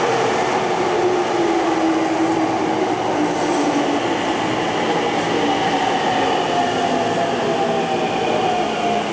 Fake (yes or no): no